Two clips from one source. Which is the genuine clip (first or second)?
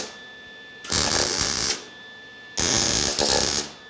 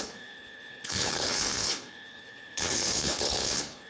first